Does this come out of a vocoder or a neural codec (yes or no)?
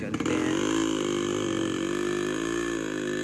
no